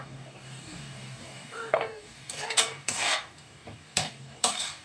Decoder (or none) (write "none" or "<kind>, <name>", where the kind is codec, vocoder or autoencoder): codec, DAC